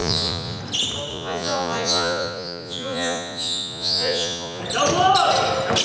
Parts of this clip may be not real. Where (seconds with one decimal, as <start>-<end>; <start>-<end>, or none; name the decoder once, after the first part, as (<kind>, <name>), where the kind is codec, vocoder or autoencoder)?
0.0-0.6 (vocoder, Vocos); 1.1-4.6